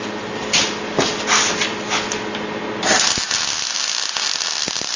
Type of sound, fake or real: real